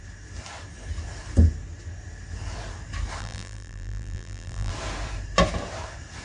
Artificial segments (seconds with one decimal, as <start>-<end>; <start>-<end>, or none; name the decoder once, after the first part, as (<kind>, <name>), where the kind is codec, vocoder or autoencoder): 3.2-4.7 (vocoder, BigVGAN v2)